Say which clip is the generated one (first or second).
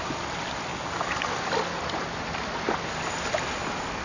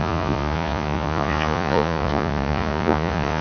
second